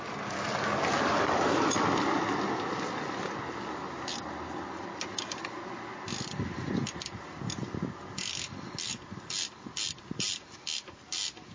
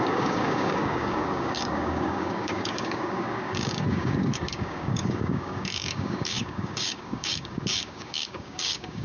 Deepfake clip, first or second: second